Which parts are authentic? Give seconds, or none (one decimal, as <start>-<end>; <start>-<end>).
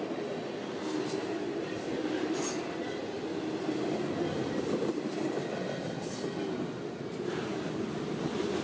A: 0.0-8.6